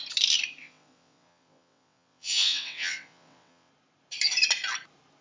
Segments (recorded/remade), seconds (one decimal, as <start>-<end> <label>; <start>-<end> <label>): 0.0-0.6 recorded; 0.6-3.7 remade; 3.7-5.2 recorded